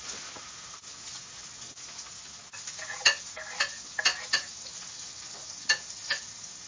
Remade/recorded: recorded